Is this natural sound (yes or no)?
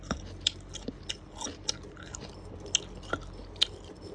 yes